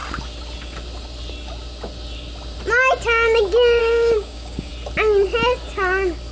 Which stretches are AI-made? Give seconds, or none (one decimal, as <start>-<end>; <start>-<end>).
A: 3.8-4.7